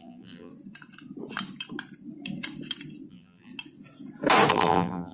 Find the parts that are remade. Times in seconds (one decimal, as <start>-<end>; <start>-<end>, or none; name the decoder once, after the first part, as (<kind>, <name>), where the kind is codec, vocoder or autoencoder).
0.0-0.5 (vocoder, BigVGAN v2); 3.1-3.5; 4.5-5.1